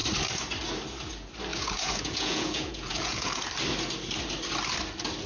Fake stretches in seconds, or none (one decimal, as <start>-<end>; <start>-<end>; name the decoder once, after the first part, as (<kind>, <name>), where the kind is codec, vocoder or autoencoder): 1.5-3.5 (vocoder, Vocos)